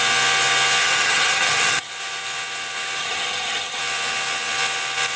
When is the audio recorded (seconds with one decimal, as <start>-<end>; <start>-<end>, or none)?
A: 0.0-0.8; 1.9-3.0; 3.8-5.2